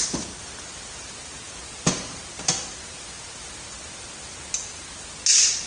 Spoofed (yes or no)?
no